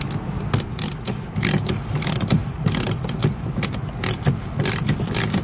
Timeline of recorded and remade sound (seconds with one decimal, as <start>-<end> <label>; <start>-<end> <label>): 0.0-5.4 recorded